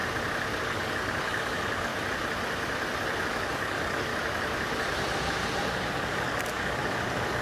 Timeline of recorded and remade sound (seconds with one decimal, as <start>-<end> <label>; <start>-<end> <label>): 0.0-0.6 recorded; 0.6-1.9 remade; 1.9-3.3 recorded; 3.3-4.1 remade; 4.1-5.9 recorded; 5.9-7.4 remade